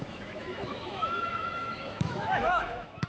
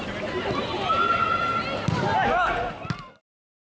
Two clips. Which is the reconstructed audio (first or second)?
first